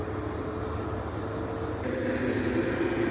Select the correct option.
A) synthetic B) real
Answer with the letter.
B